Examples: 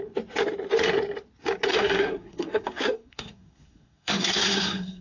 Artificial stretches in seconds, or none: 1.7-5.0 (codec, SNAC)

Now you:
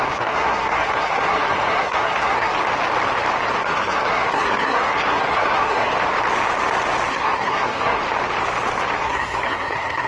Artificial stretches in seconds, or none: 0.0-2.5 (codec, SNAC); 3.6-5.9; 7.1-8.0; 9.0-10.1